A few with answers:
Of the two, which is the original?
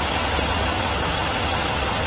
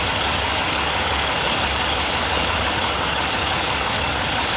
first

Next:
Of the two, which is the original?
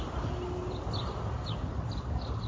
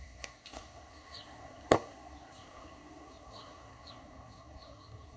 first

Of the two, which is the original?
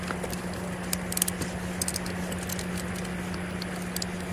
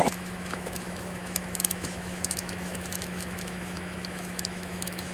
first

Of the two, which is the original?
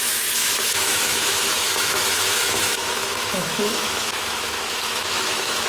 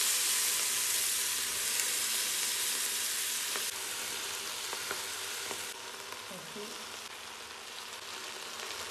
second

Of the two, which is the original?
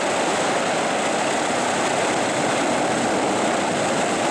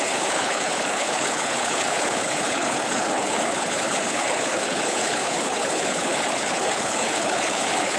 first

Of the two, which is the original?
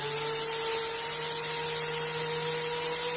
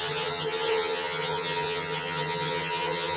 first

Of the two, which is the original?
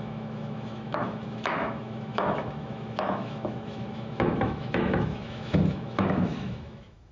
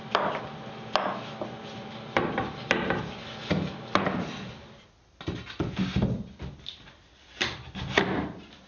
second